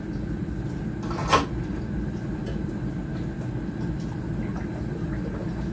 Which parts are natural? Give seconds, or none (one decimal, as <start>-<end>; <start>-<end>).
0.0-5.7